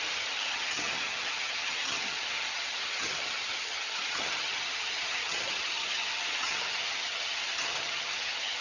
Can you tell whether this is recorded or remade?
remade